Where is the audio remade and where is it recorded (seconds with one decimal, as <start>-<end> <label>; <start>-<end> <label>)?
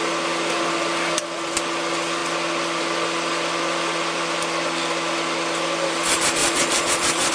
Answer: 0.0-6.4 recorded; 6.4-7.3 remade